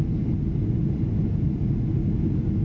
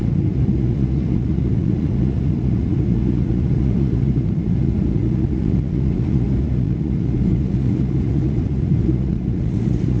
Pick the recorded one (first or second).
first